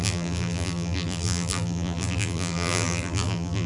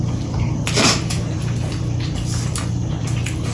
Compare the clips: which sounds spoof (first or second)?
first